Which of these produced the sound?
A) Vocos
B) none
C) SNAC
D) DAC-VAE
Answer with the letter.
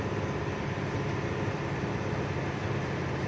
B